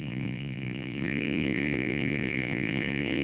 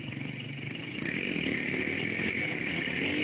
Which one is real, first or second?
second